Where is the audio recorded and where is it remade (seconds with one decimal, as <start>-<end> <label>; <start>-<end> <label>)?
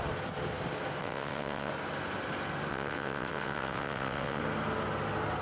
0.0-1.0 recorded; 1.0-1.7 remade; 1.7-2.7 recorded; 2.7-4.4 remade; 4.4-5.4 recorded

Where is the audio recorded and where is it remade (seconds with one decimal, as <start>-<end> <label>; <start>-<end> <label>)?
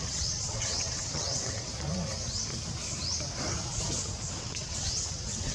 0.0-1.7 remade; 1.7-4.4 recorded; 4.4-5.5 remade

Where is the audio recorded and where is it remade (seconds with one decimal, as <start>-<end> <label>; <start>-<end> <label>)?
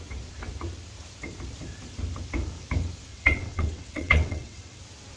0.0-3.1 recorded; 3.1-4.8 remade; 4.8-5.2 recorded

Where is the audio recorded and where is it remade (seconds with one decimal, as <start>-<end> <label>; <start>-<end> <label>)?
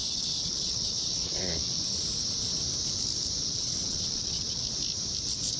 0.0-1.8 remade; 1.8-3.4 recorded; 3.4-4.6 remade; 4.6-5.6 recorded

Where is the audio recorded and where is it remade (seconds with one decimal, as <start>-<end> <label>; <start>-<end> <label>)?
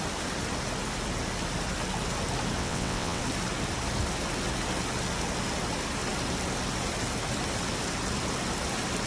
0.0-2.6 recorded; 2.6-3.2 remade; 3.2-9.1 recorded